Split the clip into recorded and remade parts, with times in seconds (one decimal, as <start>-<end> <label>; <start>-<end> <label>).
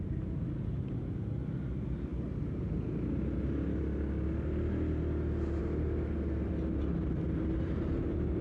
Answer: 0.0-8.4 recorded